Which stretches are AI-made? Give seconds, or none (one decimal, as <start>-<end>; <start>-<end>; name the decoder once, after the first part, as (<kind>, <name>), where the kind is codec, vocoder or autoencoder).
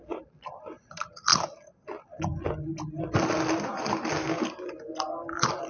none